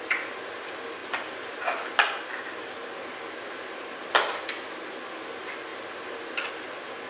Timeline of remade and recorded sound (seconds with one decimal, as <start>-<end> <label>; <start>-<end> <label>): 0.0-7.1 recorded